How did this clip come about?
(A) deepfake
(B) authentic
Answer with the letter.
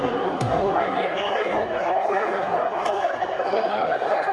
A